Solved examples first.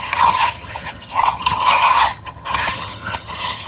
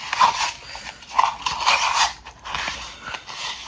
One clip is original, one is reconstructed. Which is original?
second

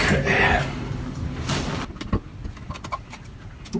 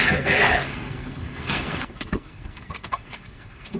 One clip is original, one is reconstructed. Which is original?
first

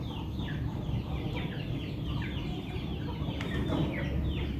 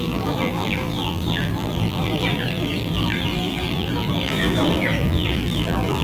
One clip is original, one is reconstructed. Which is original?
first